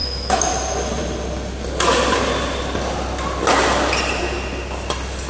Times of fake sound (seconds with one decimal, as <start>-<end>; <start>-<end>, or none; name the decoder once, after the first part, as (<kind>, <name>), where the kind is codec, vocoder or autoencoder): 0.0-0.5 (autoencoder, DAC-VAE)